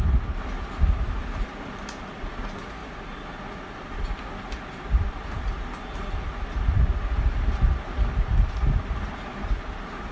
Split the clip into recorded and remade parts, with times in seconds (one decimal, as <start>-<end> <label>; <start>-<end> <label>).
0.0-10.1 recorded